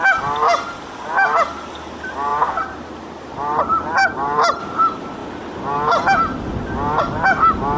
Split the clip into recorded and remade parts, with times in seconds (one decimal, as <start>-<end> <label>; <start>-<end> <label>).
0.0-4.0 recorded; 4.0-4.6 remade; 4.6-7.8 recorded